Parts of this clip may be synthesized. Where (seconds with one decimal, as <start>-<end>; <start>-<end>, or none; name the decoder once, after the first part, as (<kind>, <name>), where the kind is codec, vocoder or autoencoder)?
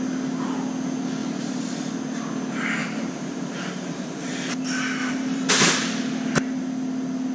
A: 1.2-1.9 (vocoder, BigVGAN v2); 2.8-4.3; 5.0-5.5